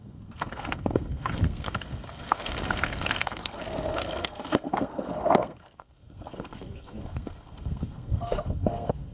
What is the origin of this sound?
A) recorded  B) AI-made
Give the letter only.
B